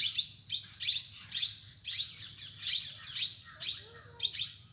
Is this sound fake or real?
real